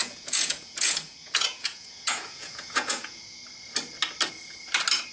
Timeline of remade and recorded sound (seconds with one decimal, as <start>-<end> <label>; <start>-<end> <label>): 0.0-3.4 remade; 3.4-5.1 recorded